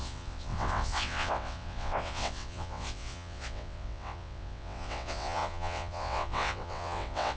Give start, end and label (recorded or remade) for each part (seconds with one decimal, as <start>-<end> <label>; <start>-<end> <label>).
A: 0.0-7.4 remade